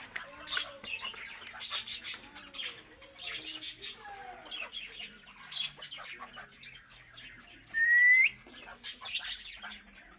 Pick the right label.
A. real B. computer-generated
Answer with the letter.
A